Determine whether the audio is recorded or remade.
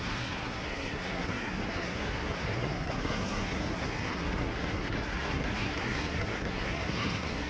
remade